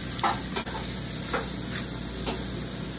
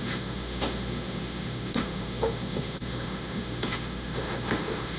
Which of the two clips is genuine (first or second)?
first